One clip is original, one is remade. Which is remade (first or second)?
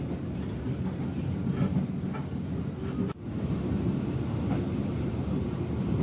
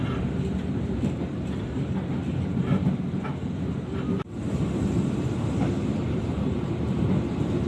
second